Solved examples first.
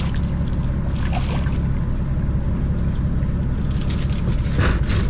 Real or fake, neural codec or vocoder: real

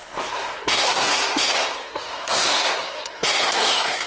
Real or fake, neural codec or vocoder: fake, codec, SNAC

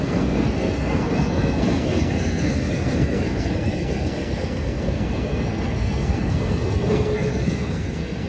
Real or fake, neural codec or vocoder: fake, codec, SNAC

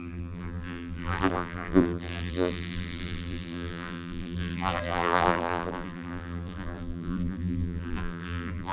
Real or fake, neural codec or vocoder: fake, vocoder, BigVGAN v2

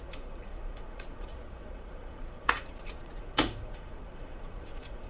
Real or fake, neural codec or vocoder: fake, vocoder, Vocos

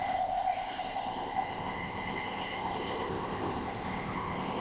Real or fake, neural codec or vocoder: fake, codec, ZipCodec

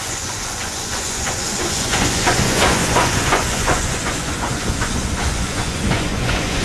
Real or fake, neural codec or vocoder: fake, vocoder, Vocos